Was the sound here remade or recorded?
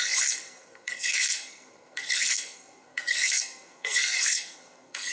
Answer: remade